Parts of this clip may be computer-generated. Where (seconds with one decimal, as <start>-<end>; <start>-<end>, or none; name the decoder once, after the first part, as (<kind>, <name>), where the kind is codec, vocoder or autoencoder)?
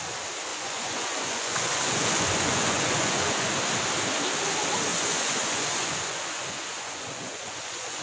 0.5-3.5 (vocoder, Vocos); 4.9-8.0